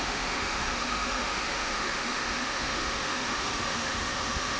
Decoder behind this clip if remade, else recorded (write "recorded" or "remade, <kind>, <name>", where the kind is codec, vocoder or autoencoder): remade, autoencoder, DAC-VAE